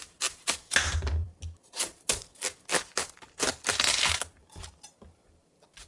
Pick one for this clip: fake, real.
real